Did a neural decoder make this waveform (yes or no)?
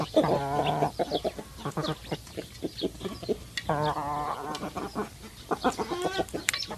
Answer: no